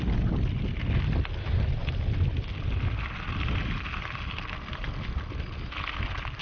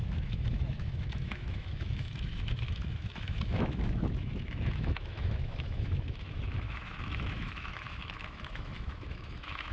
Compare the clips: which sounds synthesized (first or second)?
second